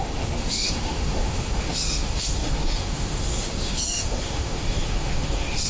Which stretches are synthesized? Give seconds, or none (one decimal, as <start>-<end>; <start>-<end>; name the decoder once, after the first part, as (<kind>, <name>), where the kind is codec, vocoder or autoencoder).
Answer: 0.0-5.7 (autoencoder, DAC-VAE)